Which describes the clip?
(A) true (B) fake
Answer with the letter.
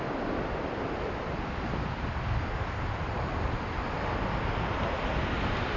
A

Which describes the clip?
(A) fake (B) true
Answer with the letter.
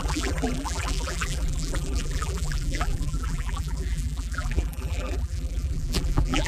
A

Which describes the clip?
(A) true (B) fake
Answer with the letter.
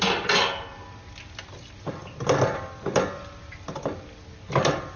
A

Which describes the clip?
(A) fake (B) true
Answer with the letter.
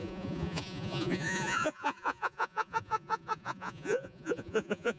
A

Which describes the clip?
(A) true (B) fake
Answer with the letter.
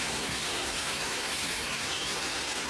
B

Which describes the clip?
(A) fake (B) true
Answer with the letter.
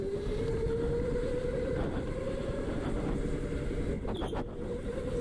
B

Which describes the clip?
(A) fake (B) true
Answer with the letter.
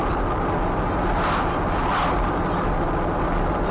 B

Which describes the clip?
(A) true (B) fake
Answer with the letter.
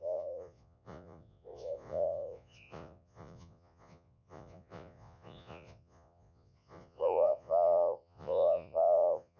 B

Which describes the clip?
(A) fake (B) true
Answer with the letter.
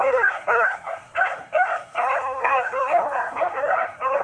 A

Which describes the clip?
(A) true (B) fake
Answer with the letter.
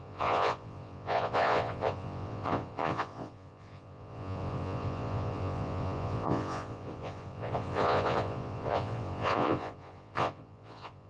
B